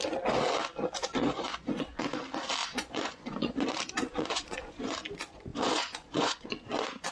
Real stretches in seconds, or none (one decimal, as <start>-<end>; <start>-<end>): 0.0-1.2; 2.2-2.6; 3.7-4.3; 4.9-5.5